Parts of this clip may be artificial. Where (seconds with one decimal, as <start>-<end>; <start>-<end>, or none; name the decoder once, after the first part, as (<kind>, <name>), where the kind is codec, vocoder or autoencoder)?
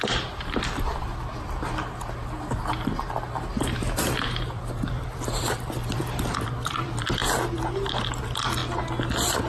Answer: 0.0-2.7 (vocoder, BigVGAN v2); 3.7-7.2; 8.2-8.6